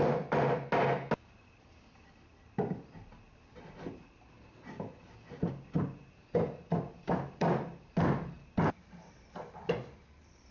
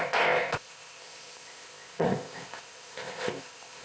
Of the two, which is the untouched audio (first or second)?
first